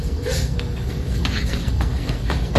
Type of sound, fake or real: fake